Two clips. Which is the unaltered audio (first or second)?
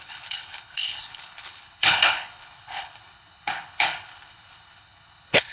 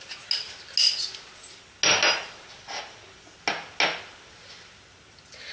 second